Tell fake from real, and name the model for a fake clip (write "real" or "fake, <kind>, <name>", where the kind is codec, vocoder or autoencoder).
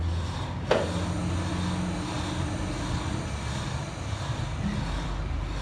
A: real